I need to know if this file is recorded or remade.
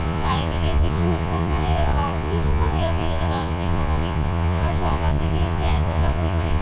remade